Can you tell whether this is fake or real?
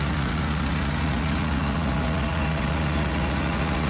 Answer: fake